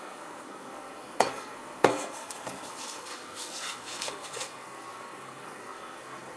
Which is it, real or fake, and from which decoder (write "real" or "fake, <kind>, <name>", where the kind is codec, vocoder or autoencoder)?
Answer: fake, codec, SNAC